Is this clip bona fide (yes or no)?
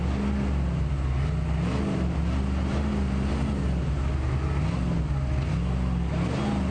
yes